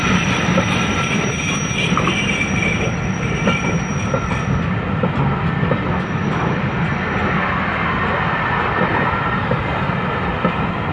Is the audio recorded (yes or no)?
yes